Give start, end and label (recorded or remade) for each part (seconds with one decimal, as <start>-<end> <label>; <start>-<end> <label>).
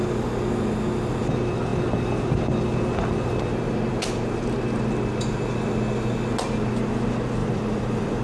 0.0-7.4 recorded; 7.4-8.2 remade